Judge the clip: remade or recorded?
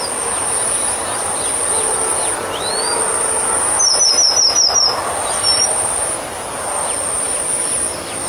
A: recorded